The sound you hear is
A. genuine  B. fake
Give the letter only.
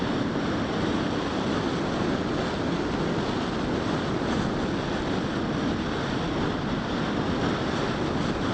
A